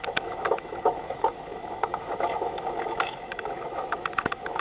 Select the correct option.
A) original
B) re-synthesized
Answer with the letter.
B